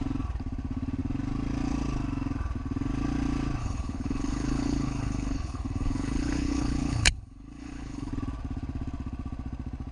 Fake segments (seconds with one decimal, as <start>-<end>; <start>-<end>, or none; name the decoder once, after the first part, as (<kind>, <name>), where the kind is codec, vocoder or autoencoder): 3.6-8.1 (codec, HILCodec)